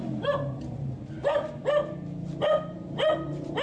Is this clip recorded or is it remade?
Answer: recorded